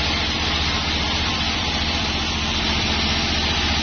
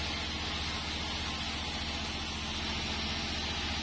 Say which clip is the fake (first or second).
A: first